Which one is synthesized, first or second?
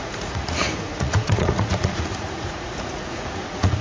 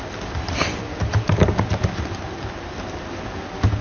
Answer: first